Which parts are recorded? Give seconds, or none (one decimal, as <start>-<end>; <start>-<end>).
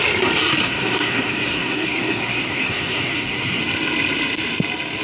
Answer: 0.0-0.6; 3.6-5.0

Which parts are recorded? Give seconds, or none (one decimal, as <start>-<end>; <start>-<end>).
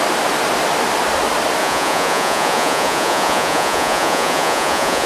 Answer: 0.0-1.6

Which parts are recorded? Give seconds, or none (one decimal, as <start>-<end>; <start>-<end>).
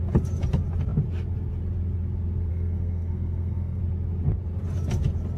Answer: 0.0-2.5; 3.8-5.4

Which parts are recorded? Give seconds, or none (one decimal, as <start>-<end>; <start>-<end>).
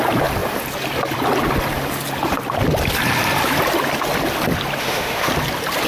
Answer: 0.0-4.8; 5.3-5.9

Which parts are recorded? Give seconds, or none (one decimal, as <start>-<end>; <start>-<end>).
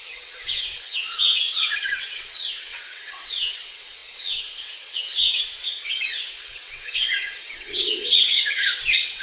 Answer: none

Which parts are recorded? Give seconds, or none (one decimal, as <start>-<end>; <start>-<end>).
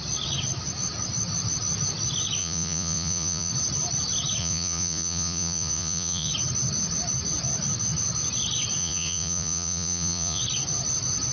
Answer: 0.0-2.4; 3.5-4.4; 6.3-8.8; 10.4-11.3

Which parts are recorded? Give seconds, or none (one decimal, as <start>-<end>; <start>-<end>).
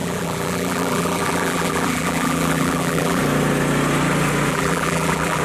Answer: 3.2-4.5